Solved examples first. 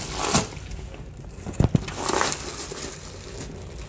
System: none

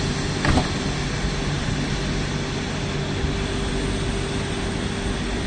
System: none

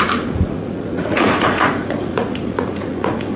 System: vocoder, Vocos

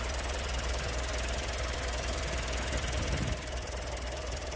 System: vocoder, BigVGAN v2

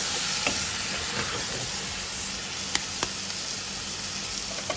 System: none